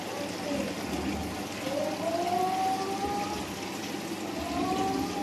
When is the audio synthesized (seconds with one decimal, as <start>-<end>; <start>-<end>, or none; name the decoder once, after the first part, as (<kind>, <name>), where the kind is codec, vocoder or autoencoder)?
none